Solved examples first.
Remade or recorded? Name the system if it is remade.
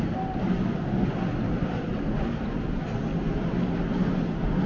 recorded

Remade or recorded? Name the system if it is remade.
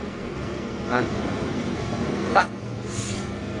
remade, codec, SNAC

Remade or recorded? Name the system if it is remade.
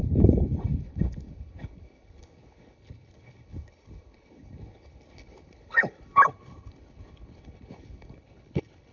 remade, codec, HILCodec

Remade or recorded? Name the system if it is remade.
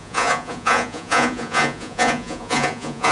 remade, vocoder, Vocos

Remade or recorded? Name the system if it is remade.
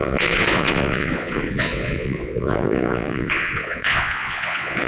remade, vocoder, Vocos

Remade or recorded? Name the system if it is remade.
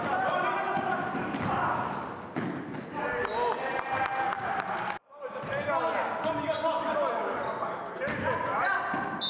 recorded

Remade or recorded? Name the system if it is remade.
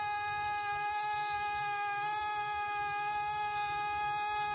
recorded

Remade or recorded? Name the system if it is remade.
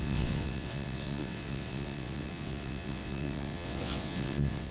remade, vocoder, WaveNeXt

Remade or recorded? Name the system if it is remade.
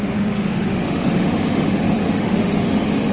remade, autoencoder, DAC-VAE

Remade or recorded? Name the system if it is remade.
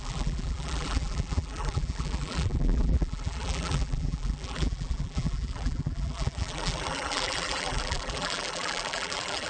remade, vocoder, BigVGAN v2